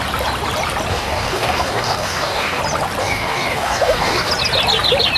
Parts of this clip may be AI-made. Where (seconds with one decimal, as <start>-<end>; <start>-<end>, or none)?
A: 0.9-2.6; 3.0-4.3